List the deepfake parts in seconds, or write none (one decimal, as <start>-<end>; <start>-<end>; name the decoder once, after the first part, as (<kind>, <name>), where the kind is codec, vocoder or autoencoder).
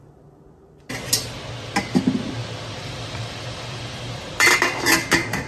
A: 2.4-4.6 (vocoder, BigVGAN v2)